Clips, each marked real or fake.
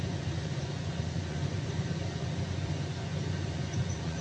fake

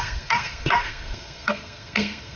fake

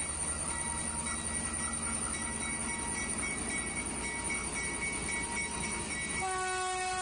real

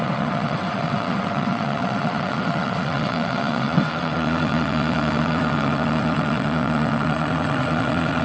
fake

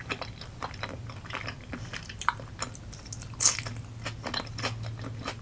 real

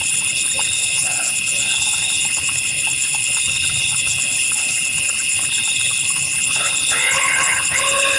fake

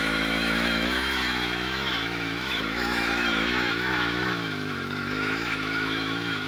fake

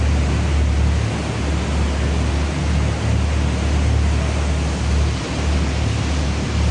real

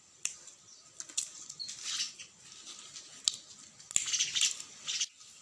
real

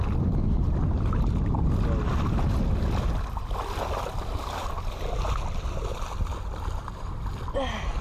real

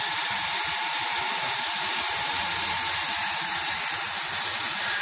real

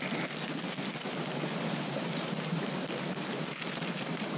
real